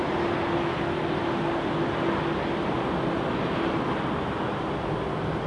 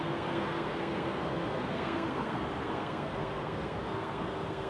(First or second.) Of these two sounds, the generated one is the second